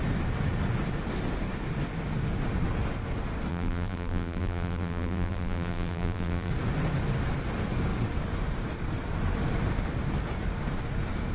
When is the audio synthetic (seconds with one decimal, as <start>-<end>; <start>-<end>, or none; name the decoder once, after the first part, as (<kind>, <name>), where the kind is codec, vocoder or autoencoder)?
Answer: 3.5-6.5 (vocoder, BigVGAN v2)